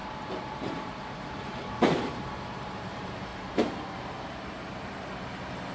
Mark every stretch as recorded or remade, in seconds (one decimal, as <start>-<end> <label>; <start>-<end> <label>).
0.0-0.5 recorded; 0.5-3.3 remade; 3.3-5.7 recorded